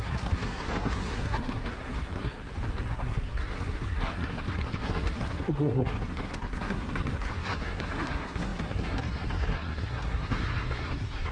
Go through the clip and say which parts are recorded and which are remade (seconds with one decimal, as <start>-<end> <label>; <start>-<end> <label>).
0.0-2.4 remade; 2.4-2.9 recorded; 2.9-11.3 remade